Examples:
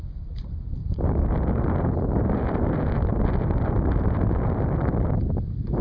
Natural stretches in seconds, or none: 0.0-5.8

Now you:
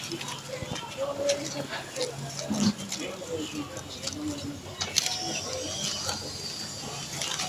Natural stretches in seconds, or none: 0.0-7.5

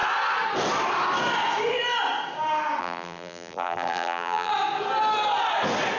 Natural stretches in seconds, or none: 0.0-2.8; 4.5-6.0

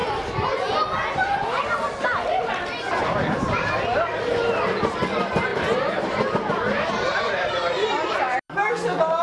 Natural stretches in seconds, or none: 0.0-5.5; 8.4-9.2

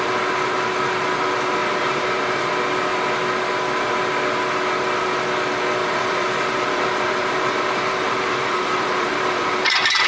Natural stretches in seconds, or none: 0.0-1.6; 2.5-5.8

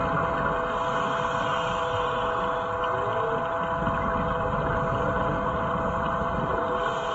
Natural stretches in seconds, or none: 0.0-4.3

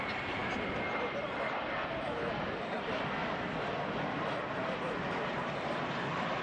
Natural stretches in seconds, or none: 3.2-5.1